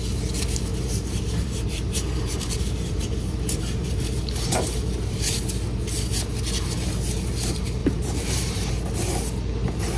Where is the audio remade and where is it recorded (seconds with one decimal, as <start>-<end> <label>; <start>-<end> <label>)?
0.0-0.7 recorded; 0.7-5.4 remade; 5.4-7.8 recorded; 7.8-8.7 remade; 8.7-10.0 recorded